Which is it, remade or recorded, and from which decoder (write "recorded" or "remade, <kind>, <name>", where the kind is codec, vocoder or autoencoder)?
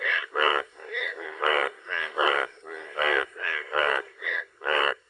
remade, codec, SNAC